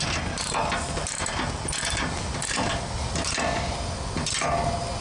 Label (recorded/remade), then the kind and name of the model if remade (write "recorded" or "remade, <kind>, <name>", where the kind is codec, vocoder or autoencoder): recorded